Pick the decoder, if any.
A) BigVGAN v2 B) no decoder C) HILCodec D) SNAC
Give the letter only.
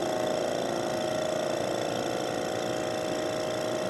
B